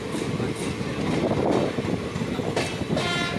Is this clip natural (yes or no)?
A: yes